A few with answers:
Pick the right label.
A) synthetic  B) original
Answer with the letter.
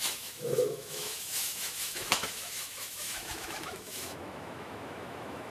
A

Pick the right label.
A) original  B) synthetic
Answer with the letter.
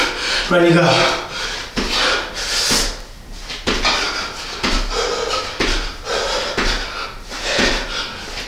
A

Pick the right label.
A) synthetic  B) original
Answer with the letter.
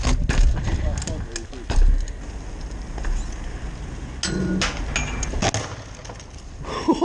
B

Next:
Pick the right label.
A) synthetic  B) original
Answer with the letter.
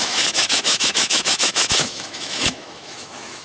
A